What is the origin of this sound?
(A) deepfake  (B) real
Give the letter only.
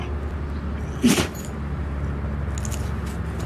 B